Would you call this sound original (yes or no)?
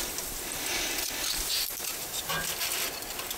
yes